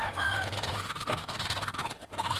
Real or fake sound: fake